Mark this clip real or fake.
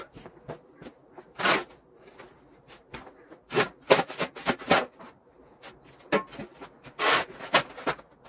real